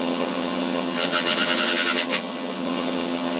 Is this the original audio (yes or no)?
no